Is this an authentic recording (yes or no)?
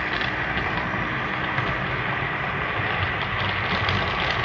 yes